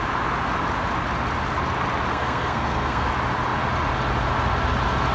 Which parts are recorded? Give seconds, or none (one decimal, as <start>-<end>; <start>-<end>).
0.0-2.1; 3.1-5.1